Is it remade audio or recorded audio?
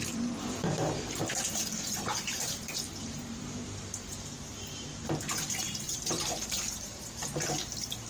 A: remade